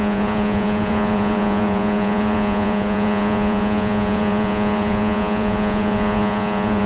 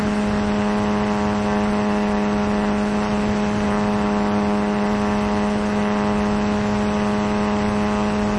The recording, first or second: second